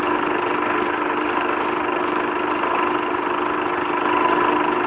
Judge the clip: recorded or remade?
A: recorded